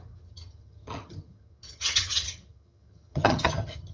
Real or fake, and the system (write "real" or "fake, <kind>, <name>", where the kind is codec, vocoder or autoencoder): fake, vocoder, HiFi-GAN